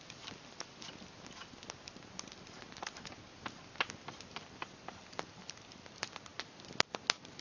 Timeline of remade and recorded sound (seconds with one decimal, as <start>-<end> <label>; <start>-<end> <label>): 0.0-7.4 recorded